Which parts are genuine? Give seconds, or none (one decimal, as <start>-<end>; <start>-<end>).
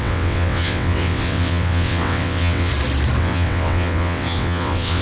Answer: 2.7-3.2